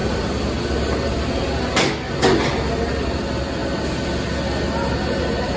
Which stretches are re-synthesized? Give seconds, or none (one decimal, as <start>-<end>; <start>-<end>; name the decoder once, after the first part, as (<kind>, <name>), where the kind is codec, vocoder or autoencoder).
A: none